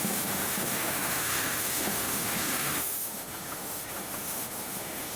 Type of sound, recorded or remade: remade